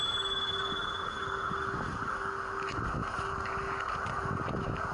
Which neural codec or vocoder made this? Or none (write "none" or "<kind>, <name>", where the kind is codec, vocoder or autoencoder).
codec, DAC